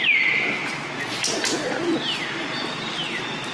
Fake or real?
real